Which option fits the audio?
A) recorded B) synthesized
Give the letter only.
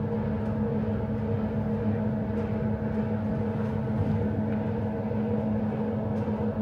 A